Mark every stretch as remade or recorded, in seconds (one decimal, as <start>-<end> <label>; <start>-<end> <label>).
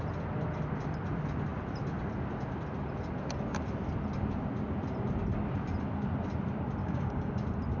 0.0-6.8 recorded; 6.8-7.3 remade; 7.3-7.8 recorded